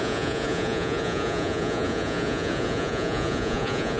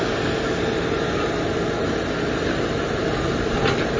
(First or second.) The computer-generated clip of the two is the first